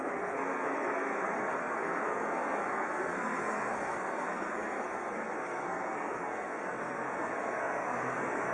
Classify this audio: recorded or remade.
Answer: remade